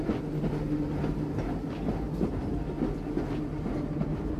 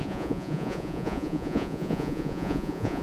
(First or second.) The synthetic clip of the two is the second